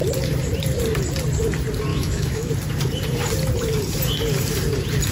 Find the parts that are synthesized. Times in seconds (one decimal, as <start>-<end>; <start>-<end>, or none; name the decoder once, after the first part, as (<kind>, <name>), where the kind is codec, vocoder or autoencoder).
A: 1.9-2.5 (autoencoder, DAC-VAE)